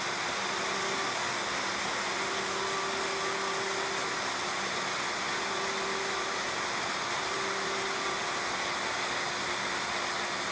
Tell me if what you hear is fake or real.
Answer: real